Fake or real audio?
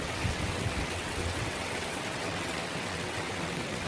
fake